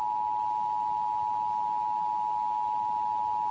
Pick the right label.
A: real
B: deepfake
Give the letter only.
A